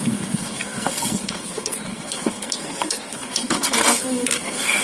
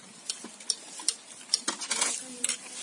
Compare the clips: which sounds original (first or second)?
second